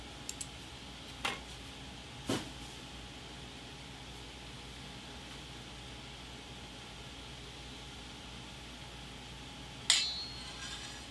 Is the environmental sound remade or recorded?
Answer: recorded